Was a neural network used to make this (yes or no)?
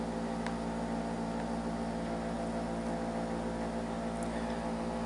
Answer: no